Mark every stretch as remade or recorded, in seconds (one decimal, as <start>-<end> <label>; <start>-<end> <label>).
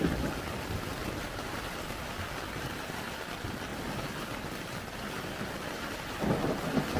0.0-1.0 recorded; 1.0-2.8 remade; 2.8-3.7 recorded; 3.7-5.8 remade; 5.8-7.0 recorded